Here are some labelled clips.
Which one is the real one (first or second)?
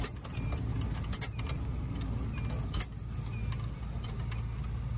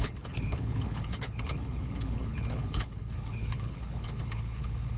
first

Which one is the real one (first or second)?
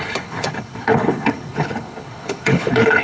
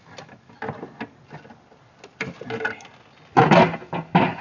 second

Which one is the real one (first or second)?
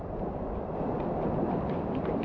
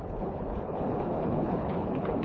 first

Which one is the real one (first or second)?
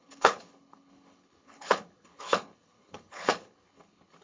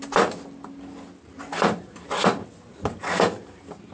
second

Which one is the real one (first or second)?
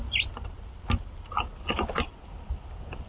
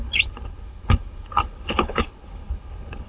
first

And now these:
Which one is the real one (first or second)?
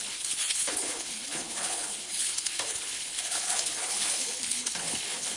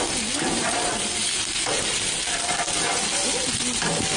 second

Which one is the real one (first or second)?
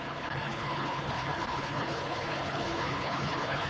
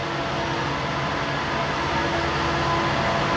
second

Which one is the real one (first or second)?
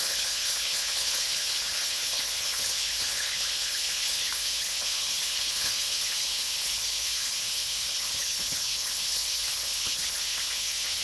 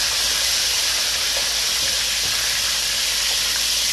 second